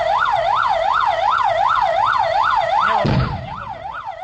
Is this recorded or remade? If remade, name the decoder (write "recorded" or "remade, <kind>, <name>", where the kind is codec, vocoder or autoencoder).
recorded